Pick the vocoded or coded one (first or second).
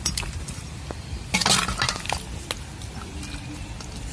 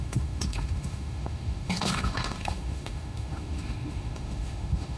second